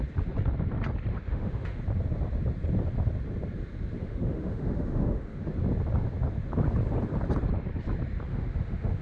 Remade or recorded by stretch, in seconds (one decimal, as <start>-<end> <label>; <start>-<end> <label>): 0.0-1.1 recorded; 1.1-1.8 remade; 1.8-4.0 recorded; 4.0-5.5 remade; 5.5-8.3 recorded; 8.3-9.0 remade